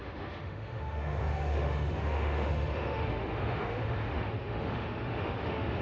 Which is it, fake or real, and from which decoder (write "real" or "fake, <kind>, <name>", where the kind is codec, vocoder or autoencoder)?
fake, autoencoder, DAC-VAE